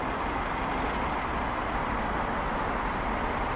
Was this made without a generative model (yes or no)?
yes